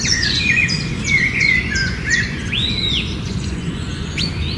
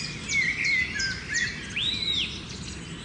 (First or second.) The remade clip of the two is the first